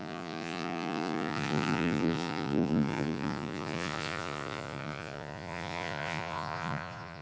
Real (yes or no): no